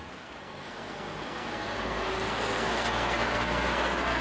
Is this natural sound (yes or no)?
no